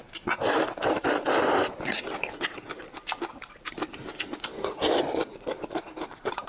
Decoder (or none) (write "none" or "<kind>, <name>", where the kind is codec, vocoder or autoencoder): none